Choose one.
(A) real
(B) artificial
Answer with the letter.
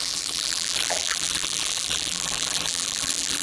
B